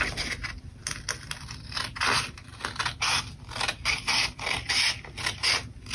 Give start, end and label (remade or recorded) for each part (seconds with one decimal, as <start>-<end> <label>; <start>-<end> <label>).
0.0-5.9 recorded